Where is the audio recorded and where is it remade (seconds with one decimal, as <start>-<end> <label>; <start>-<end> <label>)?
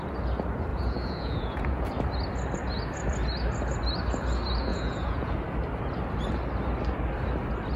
0.0-0.7 recorded; 0.7-1.9 remade; 1.9-4.7 recorded; 4.7-5.3 remade; 5.3-7.8 recorded